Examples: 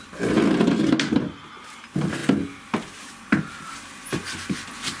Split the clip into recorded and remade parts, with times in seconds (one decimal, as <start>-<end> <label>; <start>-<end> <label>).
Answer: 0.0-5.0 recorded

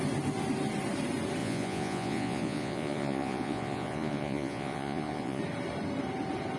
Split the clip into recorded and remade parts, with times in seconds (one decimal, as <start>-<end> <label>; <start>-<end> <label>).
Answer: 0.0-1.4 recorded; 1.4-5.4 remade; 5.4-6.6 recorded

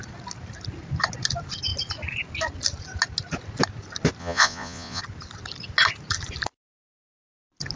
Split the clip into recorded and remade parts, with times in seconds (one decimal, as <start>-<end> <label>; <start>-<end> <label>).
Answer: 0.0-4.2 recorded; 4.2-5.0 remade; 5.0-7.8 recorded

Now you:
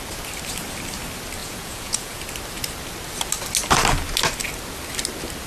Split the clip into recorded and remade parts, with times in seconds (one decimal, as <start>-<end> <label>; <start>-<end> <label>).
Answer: 0.0-1.4 recorded; 1.4-2.2 remade; 2.2-5.5 recorded

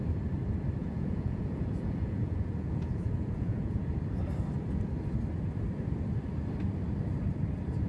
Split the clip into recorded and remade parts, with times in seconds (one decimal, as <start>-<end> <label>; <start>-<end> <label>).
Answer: 0.0-0.8 recorded; 0.8-3.8 remade; 3.8-7.9 recorded

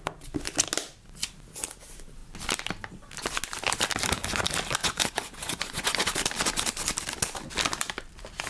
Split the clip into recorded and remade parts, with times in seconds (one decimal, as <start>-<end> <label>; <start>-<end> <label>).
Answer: 0.0-4.8 recorded; 4.8-6.1 remade; 6.1-8.5 recorded